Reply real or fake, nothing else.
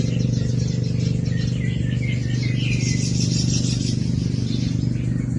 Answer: real